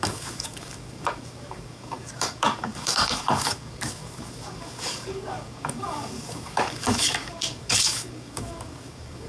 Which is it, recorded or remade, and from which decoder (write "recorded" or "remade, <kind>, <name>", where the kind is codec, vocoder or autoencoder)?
remade, codec, DAC